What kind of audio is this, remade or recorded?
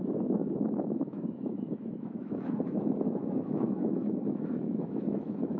remade